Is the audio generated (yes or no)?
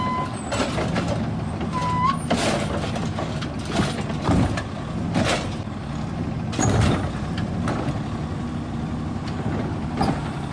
no